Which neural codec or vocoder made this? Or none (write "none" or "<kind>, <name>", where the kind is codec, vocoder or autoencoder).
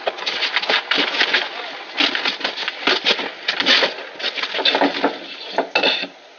none